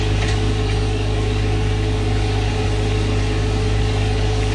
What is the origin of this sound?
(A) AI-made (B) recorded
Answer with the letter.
A